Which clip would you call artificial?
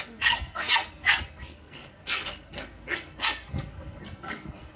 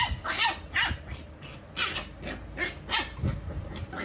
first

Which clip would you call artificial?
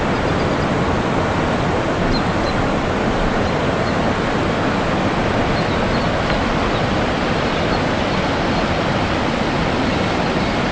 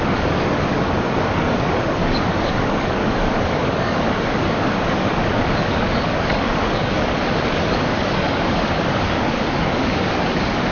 second